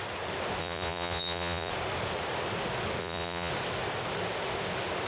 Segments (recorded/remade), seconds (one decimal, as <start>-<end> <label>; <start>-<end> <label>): 0.0-0.6 recorded; 0.6-1.7 remade; 1.7-3.0 recorded; 3.0-3.5 remade; 3.5-5.1 recorded